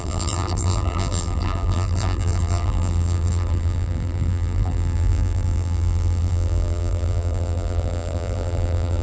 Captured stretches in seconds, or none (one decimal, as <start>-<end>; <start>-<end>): none